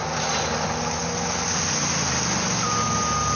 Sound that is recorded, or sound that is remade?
recorded